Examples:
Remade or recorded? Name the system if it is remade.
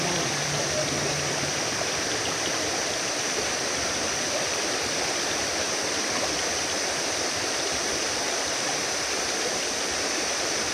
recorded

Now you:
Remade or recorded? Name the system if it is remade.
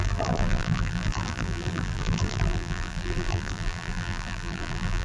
remade, vocoder, BigVGAN v2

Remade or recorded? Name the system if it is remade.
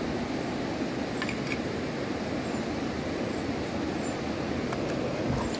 recorded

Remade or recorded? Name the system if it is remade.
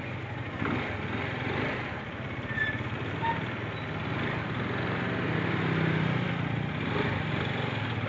recorded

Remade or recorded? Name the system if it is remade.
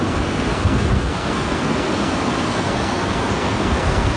remade, codec, SNAC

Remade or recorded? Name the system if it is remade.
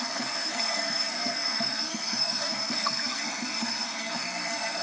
remade, codec, SNAC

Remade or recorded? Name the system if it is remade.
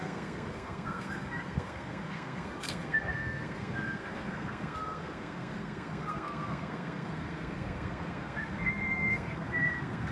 remade, codec, SNAC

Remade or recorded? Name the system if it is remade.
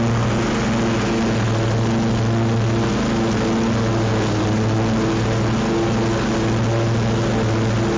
recorded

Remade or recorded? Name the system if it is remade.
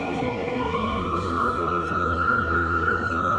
remade, codec, SNAC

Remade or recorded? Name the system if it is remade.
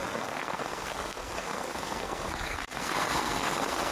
remade, codec, SNAC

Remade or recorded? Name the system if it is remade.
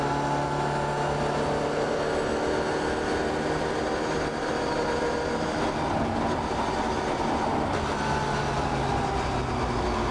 recorded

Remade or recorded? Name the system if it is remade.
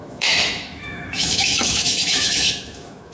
remade, autoencoder, DAC-VAE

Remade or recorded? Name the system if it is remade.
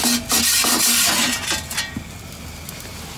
recorded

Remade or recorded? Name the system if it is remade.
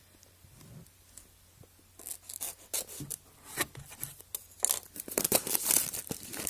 recorded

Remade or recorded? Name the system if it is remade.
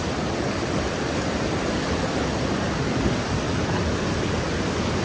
recorded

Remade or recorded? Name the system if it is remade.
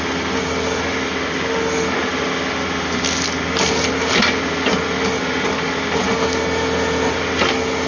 recorded